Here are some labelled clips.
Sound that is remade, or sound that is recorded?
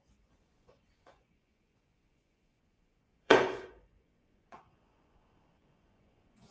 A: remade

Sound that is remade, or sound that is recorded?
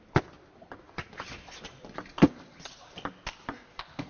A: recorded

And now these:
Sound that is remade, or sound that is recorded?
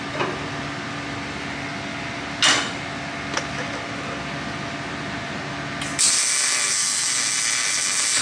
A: recorded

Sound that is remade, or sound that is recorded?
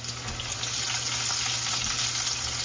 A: recorded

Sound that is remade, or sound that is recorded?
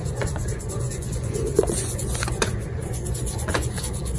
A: remade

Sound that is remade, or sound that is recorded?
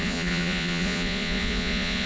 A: remade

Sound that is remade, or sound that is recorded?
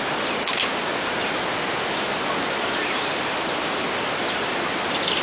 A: recorded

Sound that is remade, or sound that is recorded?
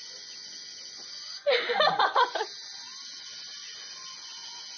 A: remade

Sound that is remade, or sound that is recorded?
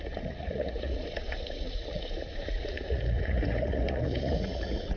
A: remade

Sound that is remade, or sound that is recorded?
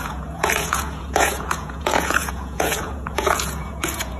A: remade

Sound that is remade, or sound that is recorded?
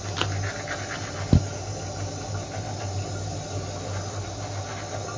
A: recorded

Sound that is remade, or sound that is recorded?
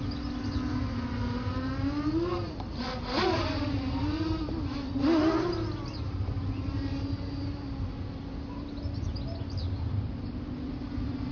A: recorded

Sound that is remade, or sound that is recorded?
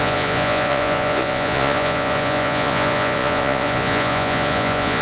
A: remade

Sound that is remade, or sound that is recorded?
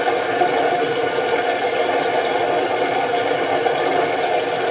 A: recorded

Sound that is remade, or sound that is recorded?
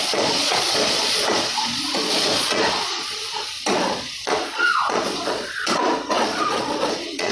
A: remade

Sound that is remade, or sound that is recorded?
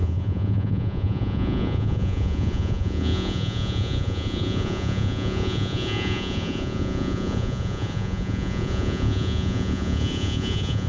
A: remade